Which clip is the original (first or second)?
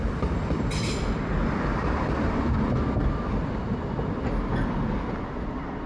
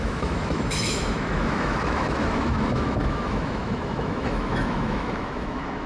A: first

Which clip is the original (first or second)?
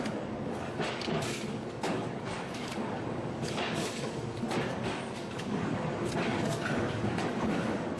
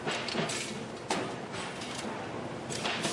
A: second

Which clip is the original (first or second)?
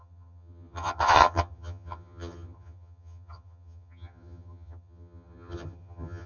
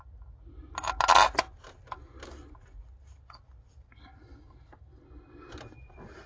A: second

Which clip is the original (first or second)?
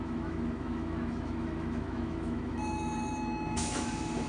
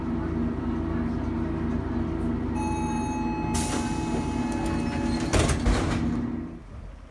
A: second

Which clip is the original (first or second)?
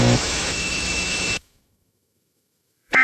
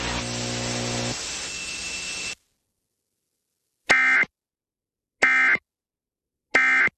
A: second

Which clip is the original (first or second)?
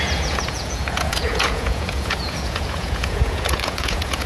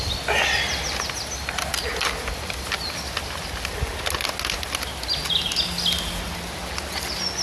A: second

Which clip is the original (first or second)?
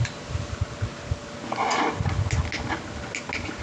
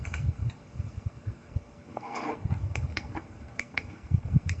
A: first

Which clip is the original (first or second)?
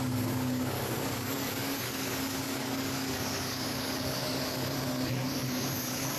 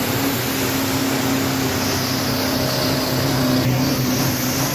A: second